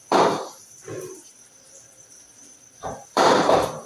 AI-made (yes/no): yes